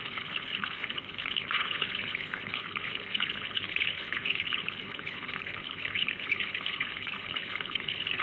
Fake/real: fake